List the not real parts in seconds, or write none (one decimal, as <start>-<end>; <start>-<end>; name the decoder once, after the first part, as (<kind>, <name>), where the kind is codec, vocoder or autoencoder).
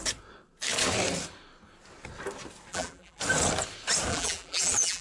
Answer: 2.7-3.2 (vocoder, BigVGAN v2); 4.1-5.0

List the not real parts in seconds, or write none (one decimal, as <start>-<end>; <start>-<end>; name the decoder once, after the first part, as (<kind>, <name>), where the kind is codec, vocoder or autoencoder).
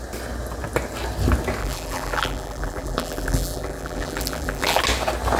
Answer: 1.6-4.8 (vocoder, BigVGAN v2)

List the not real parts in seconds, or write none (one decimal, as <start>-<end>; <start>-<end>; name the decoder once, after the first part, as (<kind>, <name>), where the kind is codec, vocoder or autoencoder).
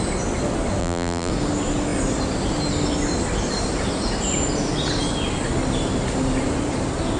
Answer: 0.8-1.3 (vocoder, BigVGAN v2)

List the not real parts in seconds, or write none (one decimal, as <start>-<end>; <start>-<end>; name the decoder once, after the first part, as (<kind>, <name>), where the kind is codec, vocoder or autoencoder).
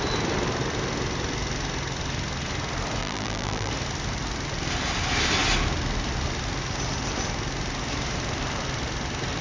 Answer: 3.0-3.7 (vocoder, BigVGAN v2)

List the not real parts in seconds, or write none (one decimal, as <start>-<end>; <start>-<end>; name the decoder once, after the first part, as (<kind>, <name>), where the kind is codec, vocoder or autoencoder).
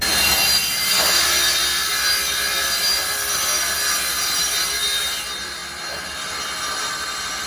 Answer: 0.0-0.9 (vocoder, BigVGAN v2); 1.9-7.5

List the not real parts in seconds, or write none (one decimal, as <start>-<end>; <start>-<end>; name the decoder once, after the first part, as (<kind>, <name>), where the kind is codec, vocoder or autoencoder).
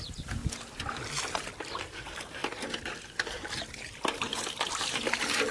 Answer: 0.0-0.4 (vocoder, BigVGAN v2); 1.8-2.4; 3.0-5.5